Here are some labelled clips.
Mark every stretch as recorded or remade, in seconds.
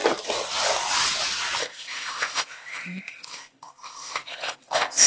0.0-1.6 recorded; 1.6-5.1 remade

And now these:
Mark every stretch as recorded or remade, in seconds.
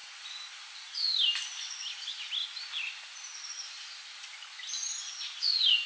0.0-5.9 recorded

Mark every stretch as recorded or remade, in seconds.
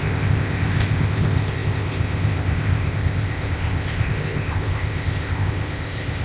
0.0-6.2 remade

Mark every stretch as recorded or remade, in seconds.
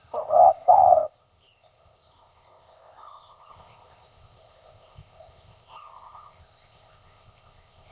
0.0-7.9 remade